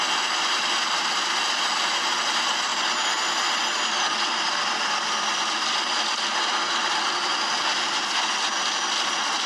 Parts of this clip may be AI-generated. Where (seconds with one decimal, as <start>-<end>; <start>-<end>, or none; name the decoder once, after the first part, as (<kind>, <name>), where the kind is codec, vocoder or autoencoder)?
none